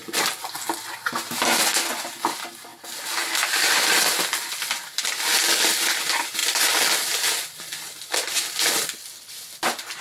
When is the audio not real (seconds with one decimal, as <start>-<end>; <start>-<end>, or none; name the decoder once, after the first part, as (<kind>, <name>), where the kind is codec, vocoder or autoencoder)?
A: none